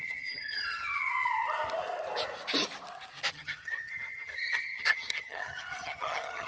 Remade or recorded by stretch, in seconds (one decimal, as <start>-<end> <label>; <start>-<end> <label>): 0.0-1.1 remade; 1.1-3.3 recorded; 3.3-6.5 remade